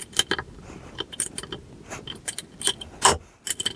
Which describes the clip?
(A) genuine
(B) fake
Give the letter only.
A